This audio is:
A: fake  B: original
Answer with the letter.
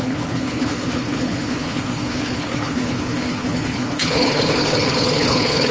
A